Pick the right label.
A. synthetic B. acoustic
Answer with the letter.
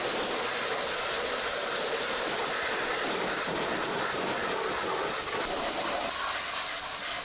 B